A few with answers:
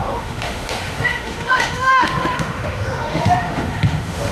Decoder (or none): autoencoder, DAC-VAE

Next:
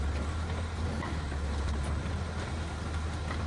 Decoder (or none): none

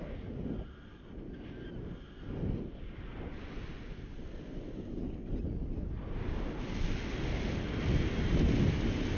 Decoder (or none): none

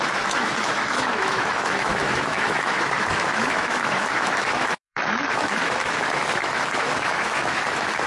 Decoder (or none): autoencoder, DAC-VAE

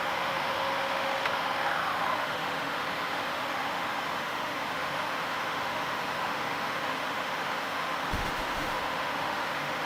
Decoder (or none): autoencoder, DAC-VAE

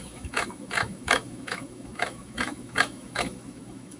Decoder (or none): autoencoder, DAC-VAE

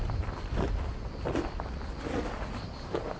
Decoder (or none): none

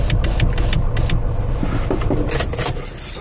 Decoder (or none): none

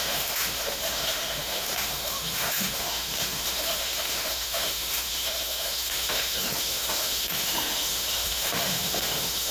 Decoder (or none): autoencoder, DAC-VAE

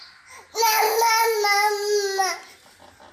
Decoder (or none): none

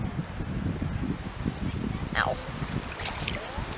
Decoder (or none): none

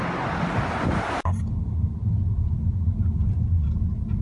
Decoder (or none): none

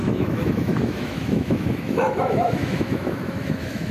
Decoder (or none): autoencoder, DAC-VAE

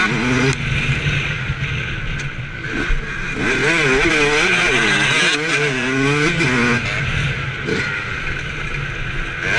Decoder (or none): none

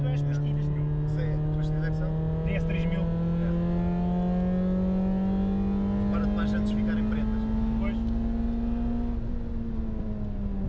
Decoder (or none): none